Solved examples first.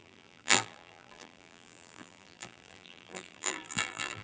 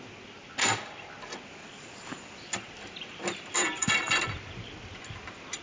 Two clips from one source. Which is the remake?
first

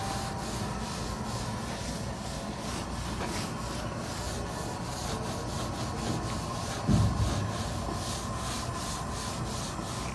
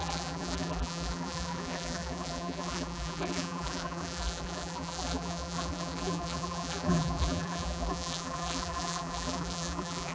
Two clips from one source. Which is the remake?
second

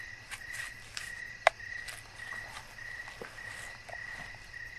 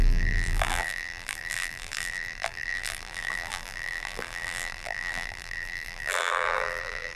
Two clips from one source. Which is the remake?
second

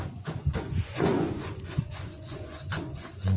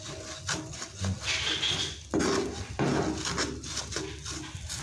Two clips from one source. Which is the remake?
first